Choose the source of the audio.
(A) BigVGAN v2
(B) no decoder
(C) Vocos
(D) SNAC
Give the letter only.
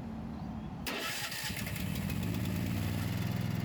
B